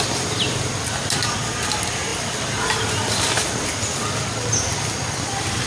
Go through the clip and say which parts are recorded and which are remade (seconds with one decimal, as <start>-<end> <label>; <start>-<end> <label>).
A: 0.0-5.7 recorded